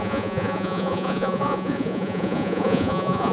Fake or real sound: fake